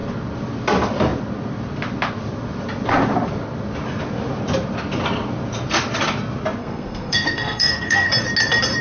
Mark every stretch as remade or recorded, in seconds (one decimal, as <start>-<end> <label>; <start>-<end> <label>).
0.0-6.6 recorded; 6.6-8.1 remade; 8.1-8.8 recorded